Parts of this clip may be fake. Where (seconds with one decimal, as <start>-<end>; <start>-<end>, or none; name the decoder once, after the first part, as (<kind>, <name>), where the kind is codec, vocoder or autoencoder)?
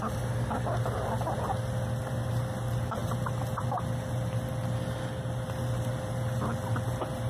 3.0-7.3 (vocoder, BigVGAN v2)